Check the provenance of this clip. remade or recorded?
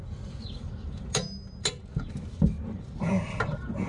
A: recorded